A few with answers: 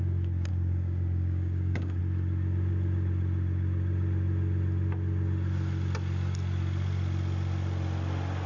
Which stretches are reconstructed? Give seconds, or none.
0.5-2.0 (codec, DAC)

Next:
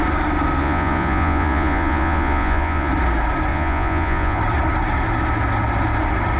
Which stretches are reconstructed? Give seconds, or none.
0.6-2.9 (vocoder, Vocos); 3.5-4.4

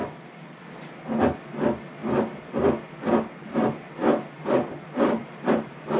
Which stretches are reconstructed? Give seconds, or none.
none

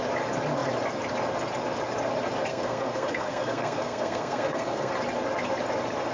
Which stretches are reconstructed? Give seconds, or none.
2.5-4.9 (codec, SNAC)

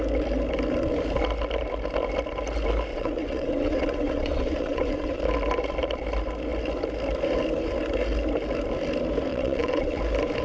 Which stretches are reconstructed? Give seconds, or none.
2.9-5.2 (vocoder, WaveNeXt); 9.3-10.0

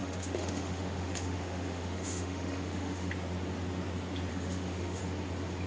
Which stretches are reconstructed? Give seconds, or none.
0.0-3.1 (autoencoder, DAC-VAE); 4.3-5.0

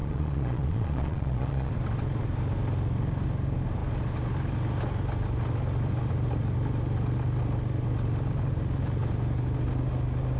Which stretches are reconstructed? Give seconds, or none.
0.0-1.7 (vocoder, Vocos)